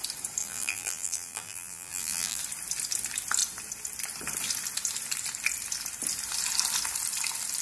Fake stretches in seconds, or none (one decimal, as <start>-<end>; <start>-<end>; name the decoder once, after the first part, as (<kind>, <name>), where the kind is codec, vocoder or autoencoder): 0.4-2.4 (vocoder, BigVGAN v2)